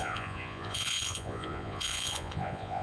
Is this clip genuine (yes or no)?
no